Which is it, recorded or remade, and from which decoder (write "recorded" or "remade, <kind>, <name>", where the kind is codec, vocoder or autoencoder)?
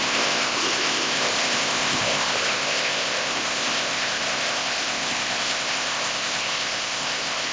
remade, codec, ZipCodec